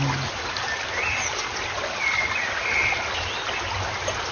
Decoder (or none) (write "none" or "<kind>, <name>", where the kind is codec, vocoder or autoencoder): none